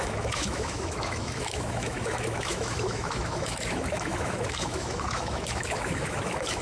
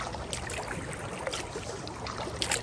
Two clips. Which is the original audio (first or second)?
second